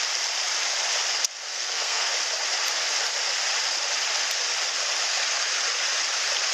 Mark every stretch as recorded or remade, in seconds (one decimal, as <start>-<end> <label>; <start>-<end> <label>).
0.0-1.5 recorded; 1.5-2.1 remade; 2.1-6.5 recorded